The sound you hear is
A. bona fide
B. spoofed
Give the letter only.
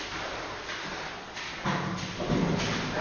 A